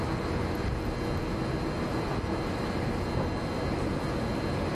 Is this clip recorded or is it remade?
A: recorded